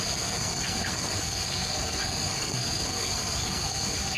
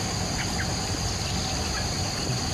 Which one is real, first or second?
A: second